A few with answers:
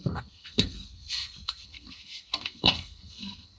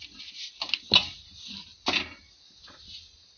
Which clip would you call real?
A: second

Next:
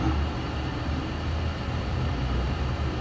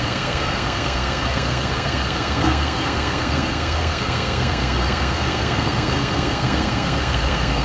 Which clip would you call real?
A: first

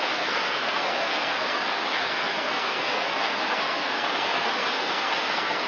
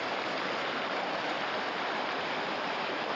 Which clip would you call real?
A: second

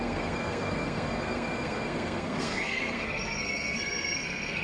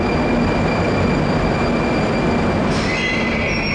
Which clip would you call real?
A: second